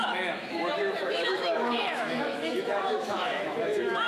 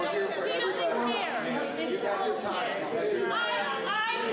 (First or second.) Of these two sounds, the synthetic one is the first